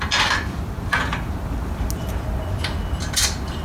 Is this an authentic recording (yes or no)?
yes